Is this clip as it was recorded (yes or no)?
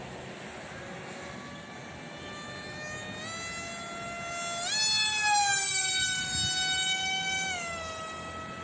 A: yes